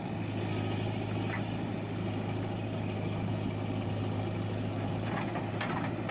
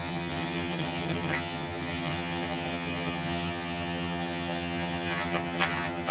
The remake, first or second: second